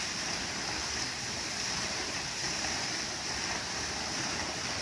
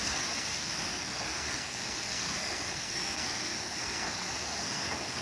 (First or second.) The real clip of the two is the first